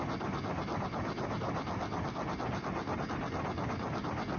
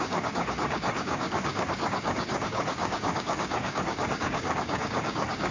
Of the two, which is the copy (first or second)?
second